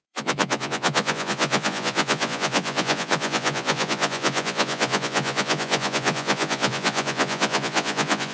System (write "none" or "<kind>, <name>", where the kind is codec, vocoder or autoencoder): vocoder, Vocos